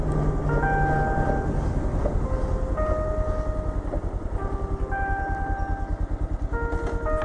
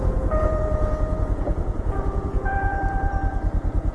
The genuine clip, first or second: first